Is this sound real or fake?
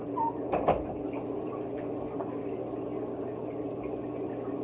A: real